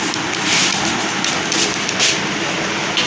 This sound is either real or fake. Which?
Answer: real